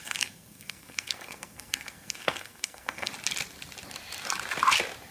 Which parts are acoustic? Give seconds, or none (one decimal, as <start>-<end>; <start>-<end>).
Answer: 3.1-5.1